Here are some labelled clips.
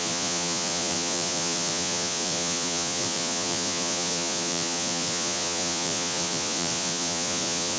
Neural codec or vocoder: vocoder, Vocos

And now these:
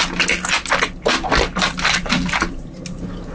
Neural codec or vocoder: none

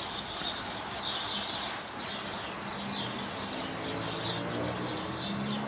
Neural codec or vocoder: none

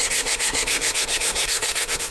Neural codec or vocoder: codec, SNAC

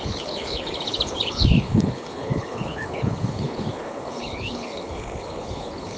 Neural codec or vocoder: codec, HILCodec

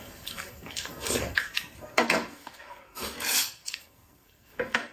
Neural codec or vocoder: codec, SNAC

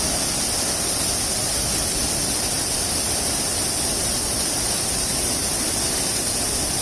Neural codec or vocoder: none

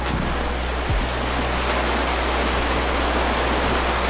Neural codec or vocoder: none